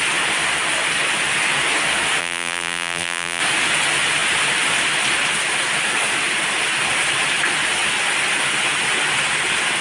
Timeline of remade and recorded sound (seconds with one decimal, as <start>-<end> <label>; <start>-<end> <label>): 0.0-2.2 recorded; 2.2-3.4 remade; 3.4-9.8 recorded